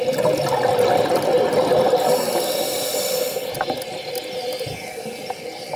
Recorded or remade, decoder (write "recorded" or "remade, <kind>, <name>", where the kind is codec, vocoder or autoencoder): recorded